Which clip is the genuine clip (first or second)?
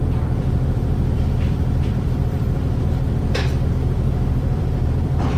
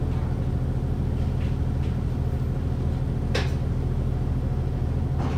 second